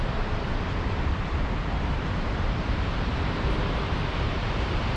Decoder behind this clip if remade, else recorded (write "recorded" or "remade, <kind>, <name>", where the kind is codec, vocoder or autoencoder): remade, vocoder, BigVGAN v2